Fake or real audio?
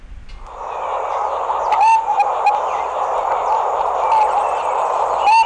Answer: real